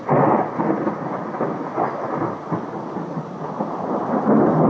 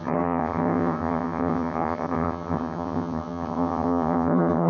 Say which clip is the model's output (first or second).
second